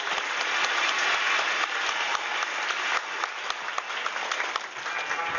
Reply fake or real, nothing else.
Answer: real